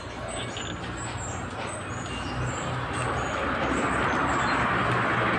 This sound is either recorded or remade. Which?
recorded